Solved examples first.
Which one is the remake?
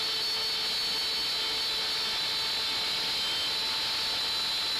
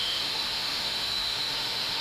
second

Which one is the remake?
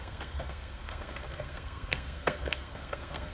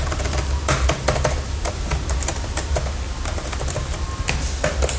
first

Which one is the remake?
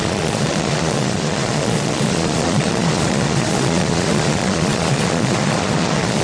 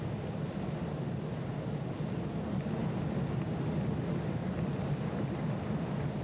first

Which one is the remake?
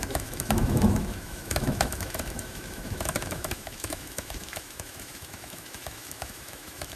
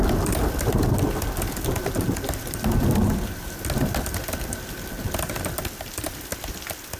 first